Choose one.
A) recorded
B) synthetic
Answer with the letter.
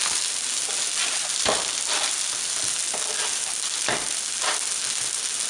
A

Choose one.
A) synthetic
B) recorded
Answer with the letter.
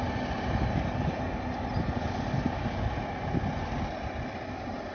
B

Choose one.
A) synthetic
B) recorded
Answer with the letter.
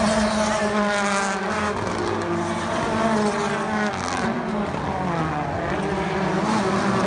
B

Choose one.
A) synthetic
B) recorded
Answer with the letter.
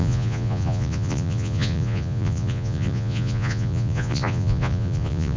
A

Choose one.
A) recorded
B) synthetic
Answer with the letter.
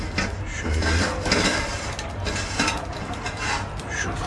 A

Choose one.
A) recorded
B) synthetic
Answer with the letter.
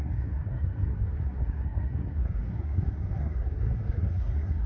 B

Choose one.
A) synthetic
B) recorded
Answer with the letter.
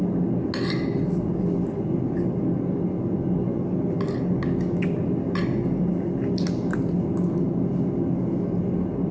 B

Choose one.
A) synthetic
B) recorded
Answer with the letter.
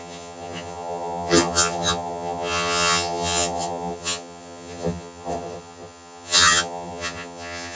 A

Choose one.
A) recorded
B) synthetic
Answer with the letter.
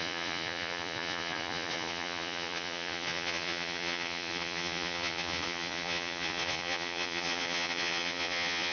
B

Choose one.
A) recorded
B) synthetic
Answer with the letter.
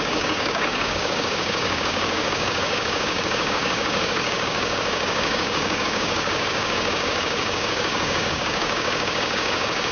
B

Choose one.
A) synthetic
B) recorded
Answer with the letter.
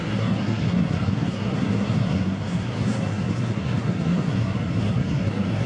A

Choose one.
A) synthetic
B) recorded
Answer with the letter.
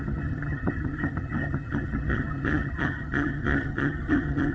A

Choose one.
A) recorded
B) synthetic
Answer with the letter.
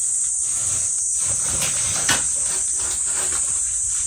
A